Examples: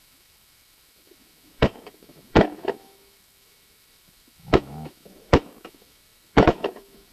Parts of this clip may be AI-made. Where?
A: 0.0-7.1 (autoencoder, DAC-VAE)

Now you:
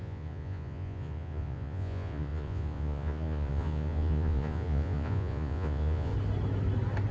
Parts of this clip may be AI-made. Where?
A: 0.0-6.1 (vocoder, Vocos)

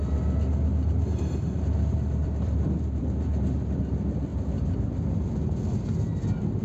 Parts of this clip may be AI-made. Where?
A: 1.0-3.8 (vocoder, BigVGAN v2); 4.3-5.6

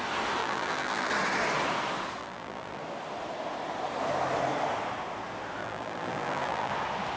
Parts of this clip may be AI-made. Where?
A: 0.4-1.1 (vocoder, BigVGAN v2); 2.2-2.8; 5.6-6.7

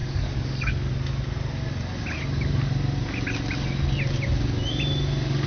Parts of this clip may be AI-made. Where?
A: 0.0-0.9 (codec, DAC)